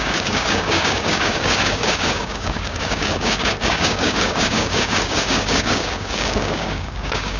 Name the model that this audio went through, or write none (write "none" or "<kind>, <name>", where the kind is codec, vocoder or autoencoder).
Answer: codec, DAC